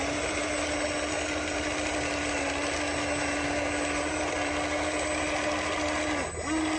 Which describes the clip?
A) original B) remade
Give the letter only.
A